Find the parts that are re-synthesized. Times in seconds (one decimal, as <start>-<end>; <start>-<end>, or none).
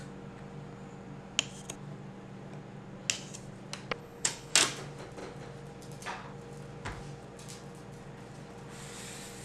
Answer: 4.0-4.5